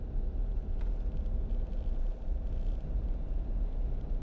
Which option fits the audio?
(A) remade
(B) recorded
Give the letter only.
B